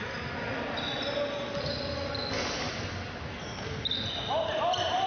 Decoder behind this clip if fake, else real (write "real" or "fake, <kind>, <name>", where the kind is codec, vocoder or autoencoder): real